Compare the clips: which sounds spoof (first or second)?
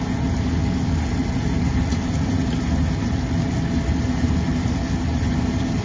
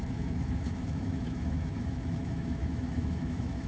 second